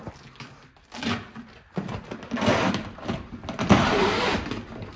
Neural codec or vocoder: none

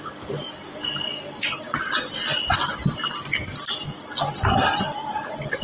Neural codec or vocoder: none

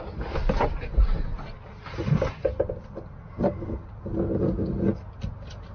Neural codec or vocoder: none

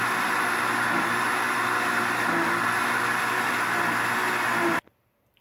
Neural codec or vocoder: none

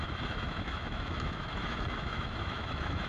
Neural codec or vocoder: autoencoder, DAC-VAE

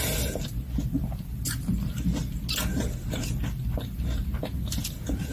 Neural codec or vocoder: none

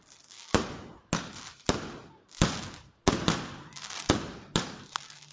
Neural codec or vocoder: none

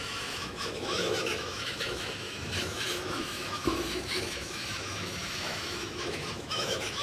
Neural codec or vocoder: autoencoder, DAC-VAE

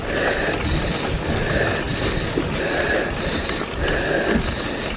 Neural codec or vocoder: none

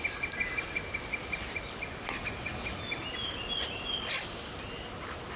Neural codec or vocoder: none